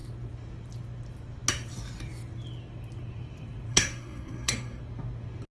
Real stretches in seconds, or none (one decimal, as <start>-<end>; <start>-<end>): 0.0-3.7; 4.8-5.6